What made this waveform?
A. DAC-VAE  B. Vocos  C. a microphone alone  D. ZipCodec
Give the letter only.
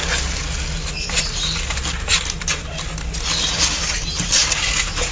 C